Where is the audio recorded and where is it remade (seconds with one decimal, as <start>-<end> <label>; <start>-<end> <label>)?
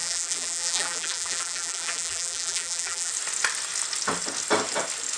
0.0-3.1 remade; 3.1-5.2 recorded